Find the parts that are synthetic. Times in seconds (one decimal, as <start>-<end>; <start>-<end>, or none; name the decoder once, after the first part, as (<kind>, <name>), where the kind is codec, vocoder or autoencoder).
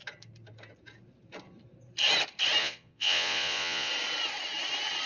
2.6-3.9 (vocoder, Vocos)